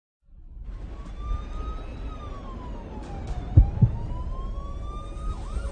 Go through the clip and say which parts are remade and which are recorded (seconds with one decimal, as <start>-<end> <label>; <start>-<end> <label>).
0.0-5.7 recorded